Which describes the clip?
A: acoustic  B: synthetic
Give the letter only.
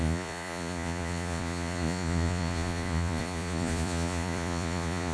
B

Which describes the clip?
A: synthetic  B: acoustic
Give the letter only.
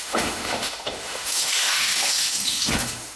A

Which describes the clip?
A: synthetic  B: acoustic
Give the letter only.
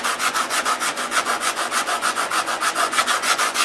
A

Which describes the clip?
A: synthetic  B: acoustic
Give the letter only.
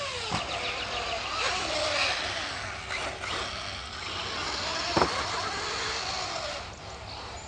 B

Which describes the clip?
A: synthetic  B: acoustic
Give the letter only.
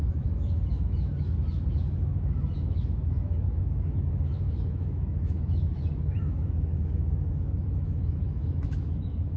A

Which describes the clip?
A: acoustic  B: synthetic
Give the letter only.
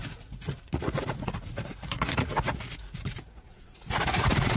B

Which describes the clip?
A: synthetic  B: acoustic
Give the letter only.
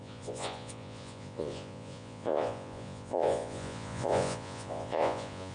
A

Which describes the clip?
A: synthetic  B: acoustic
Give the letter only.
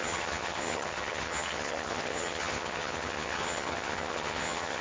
A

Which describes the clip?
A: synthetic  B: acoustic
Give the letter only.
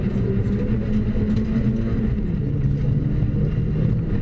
B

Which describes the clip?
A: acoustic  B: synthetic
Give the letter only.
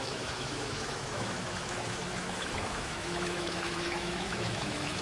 B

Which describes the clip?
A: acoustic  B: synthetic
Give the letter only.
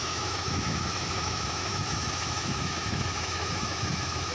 B